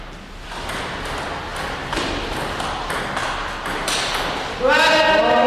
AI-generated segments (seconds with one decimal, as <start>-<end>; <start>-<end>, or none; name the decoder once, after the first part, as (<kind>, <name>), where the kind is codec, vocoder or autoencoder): 1.5-2.8 (vocoder, BigVGAN v2); 3.2-4.3